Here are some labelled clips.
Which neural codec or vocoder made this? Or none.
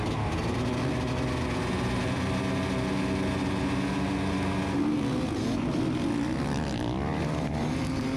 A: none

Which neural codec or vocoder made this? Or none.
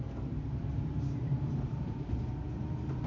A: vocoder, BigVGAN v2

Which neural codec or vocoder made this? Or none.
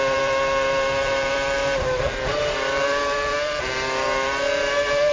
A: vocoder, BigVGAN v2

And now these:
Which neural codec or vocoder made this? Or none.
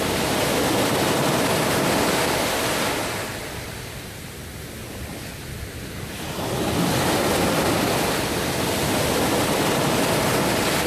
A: none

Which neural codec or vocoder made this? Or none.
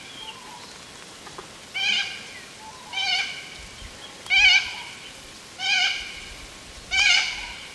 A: none